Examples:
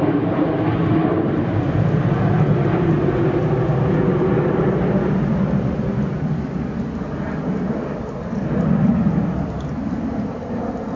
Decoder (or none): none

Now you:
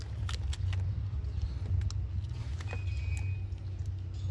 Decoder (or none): none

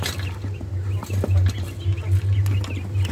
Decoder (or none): none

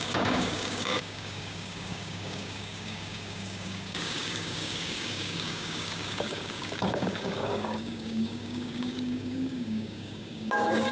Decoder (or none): codec, DAC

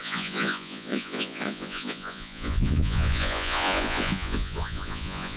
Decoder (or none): vocoder, Vocos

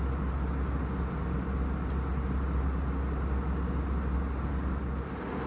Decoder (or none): none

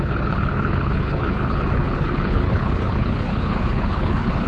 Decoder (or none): codec, HILCodec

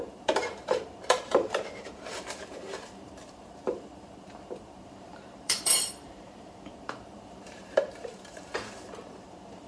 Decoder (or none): vocoder, BigVGAN v2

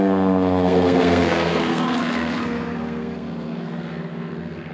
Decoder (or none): codec, SNAC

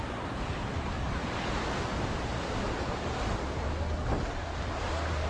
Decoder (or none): none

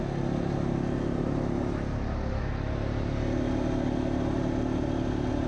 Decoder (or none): none